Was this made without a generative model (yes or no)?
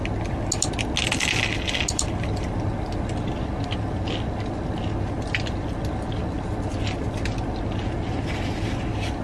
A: yes